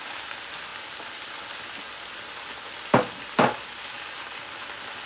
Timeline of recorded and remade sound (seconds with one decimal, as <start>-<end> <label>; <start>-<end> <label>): 0.0-5.1 recorded